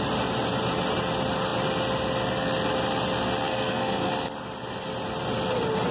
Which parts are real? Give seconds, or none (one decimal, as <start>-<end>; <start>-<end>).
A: 0.0-3.5; 4.1-5.9